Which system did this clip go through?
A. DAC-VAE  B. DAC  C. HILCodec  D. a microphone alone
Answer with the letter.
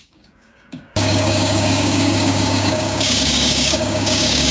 B